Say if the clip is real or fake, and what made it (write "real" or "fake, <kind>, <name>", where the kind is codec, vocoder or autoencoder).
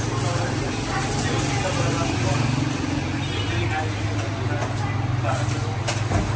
real